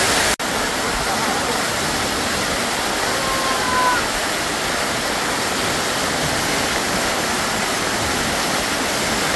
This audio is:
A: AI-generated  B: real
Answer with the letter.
B